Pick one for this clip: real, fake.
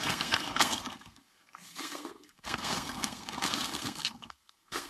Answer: fake